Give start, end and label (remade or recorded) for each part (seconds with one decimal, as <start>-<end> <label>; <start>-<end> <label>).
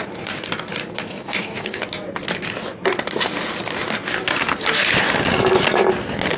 0.0-1.1 recorded; 1.1-1.8 remade; 1.8-6.4 recorded